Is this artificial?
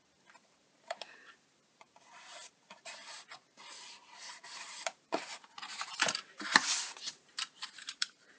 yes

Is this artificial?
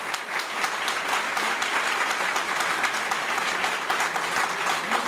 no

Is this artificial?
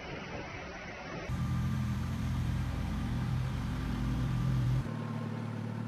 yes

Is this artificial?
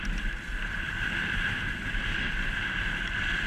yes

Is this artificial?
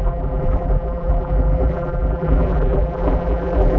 yes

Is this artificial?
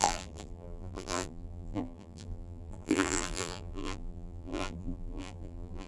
yes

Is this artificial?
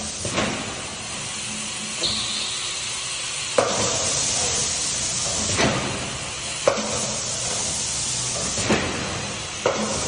no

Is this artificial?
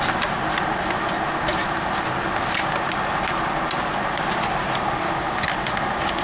no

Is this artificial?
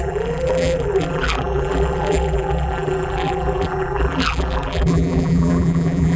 yes